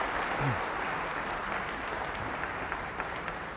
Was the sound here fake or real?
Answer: real